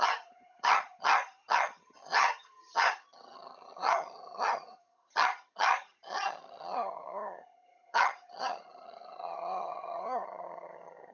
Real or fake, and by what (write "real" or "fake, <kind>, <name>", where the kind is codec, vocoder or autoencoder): fake, vocoder, HiFi-GAN